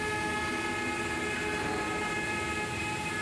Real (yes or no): yes